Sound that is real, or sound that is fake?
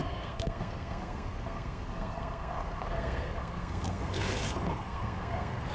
fake